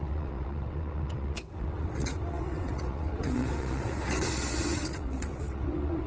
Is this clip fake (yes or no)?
yes